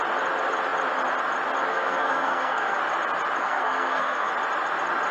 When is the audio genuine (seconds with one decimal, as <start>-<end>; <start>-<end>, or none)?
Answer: 0.0-1.7; 2.8-3.4; 4.3-5.1